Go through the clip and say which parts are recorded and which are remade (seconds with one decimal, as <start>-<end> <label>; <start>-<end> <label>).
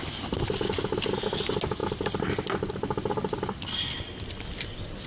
0.0-5.1 recorded